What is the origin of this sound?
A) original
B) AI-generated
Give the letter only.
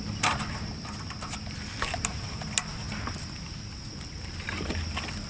A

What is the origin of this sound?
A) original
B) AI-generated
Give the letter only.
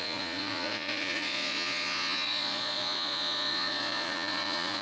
B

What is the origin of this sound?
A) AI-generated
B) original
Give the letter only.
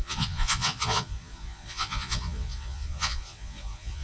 A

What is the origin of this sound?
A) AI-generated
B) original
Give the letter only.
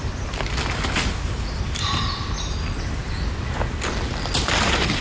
B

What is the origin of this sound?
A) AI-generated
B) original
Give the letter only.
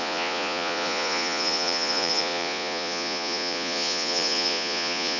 A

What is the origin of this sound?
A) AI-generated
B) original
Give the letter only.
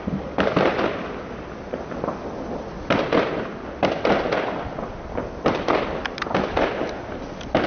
B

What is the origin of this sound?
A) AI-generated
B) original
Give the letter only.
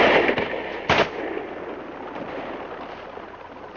B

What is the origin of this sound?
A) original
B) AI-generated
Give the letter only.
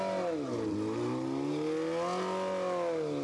A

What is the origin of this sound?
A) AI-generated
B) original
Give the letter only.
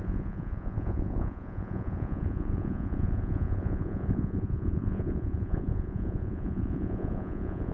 A